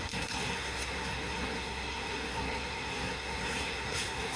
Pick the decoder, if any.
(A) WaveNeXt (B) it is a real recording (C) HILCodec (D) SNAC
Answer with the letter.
D